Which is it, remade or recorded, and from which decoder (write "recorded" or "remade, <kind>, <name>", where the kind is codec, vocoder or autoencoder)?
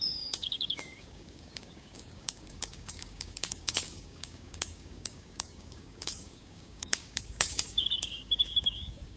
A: remade, codec, DAC